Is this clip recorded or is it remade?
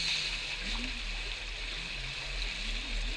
recorded